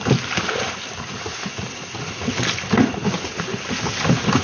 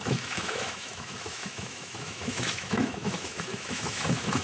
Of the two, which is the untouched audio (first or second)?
first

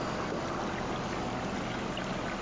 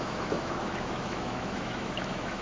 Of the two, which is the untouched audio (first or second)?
first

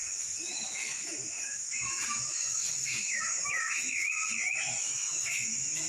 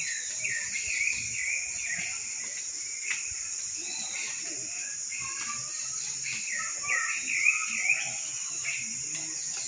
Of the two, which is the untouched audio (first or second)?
second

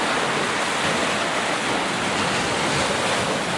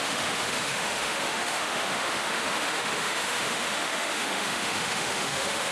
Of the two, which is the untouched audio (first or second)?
first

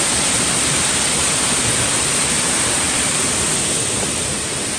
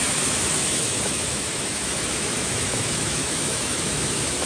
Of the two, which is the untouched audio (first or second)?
first